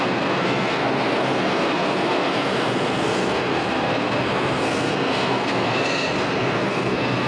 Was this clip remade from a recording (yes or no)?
yes